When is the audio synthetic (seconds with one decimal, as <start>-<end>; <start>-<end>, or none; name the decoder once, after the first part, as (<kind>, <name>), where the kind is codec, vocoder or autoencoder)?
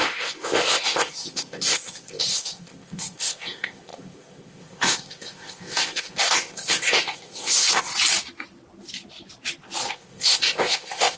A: 0.0-7.9 (codec, ZipCodec); 9.9-11.2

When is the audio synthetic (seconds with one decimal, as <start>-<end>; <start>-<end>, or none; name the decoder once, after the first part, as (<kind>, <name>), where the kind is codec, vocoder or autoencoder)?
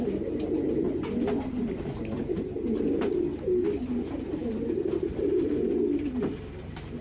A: none